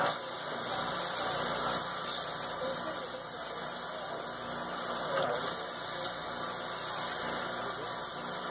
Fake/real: real